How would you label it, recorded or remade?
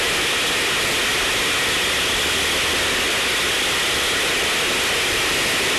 recorded